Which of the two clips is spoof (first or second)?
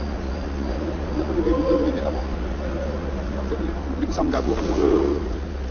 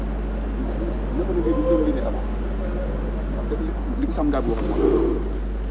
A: first